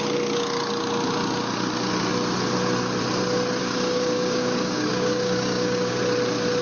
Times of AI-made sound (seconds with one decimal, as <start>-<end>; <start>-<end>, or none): 3.6-5.9